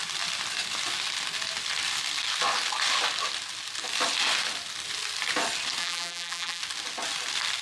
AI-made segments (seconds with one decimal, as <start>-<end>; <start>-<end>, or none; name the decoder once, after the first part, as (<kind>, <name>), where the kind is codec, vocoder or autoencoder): 5.8-6.6 (vocoder, BigVGAN v2)